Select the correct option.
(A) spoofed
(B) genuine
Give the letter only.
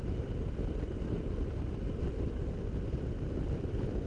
B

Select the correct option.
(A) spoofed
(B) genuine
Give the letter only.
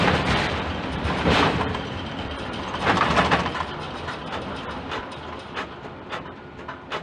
A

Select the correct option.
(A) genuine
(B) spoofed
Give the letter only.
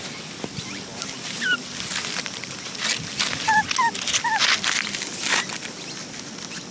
A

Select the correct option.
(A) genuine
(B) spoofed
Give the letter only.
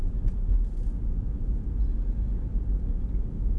A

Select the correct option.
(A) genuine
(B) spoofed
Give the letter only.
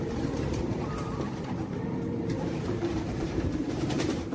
B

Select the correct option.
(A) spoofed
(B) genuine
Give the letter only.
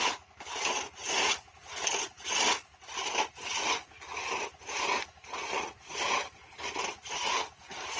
B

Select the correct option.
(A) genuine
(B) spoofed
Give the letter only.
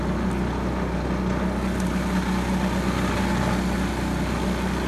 A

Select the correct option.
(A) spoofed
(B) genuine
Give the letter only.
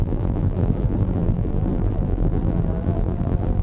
A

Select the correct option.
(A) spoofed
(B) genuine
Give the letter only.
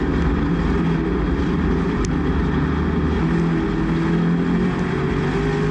B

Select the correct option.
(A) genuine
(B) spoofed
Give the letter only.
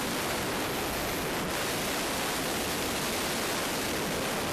A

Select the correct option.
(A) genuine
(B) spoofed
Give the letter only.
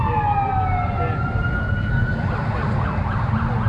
A